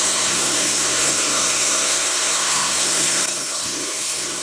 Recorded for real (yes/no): no